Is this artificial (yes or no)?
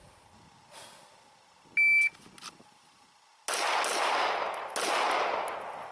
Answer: no